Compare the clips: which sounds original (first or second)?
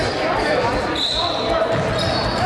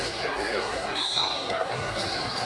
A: first